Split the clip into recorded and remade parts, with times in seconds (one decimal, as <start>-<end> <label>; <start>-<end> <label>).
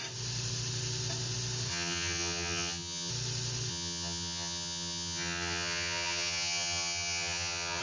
0.0-1.7 recorded; 1.7-3.1 remade; 3.1-3.7 recorded; 3.7-7.8 remade